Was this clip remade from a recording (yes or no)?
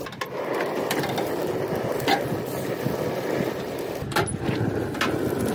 no